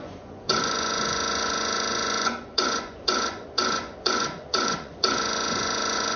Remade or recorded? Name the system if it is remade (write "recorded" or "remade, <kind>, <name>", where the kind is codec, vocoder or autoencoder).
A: remade, vocoder, Vocos